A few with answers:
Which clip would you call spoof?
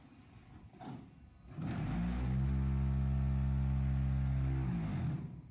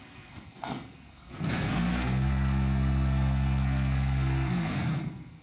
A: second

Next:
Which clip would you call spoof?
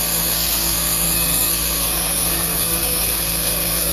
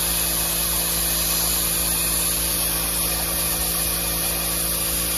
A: first